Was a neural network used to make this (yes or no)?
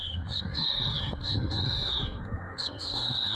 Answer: yes